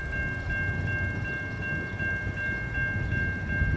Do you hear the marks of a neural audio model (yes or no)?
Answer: no